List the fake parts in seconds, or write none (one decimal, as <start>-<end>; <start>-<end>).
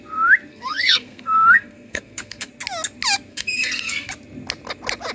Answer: 0.5-2.5; 3.3-4.1